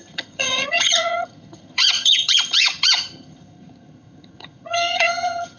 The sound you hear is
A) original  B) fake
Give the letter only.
B